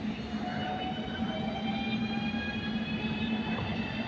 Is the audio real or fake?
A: real